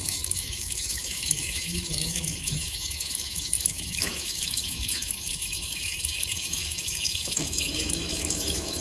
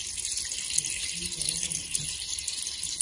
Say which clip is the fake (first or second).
first